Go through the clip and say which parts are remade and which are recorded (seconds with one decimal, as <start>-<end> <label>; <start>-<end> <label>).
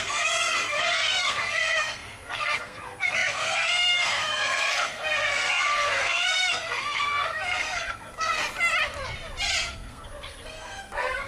0.0-8.4 remade; 8.4-9.7 recorded; 9.7-11.3 remade